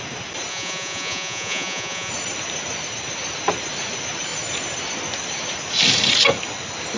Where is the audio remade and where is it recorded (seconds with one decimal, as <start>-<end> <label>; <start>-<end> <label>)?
0.0-0.5 recorded; 0.5-2.1 remade; 2.1-7.0 recorded